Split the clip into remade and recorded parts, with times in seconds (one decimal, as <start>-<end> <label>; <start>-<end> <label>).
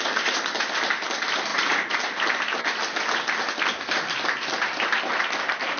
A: 0.0-5.8 recorded